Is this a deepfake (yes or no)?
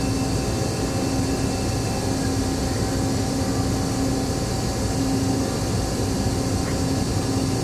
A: no